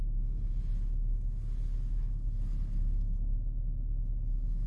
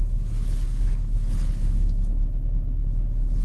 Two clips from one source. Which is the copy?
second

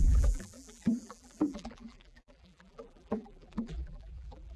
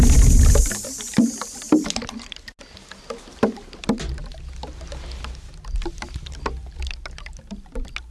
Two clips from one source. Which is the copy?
first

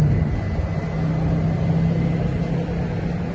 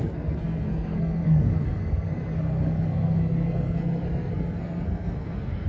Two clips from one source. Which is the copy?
second